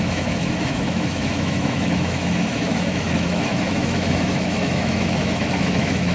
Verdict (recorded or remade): remade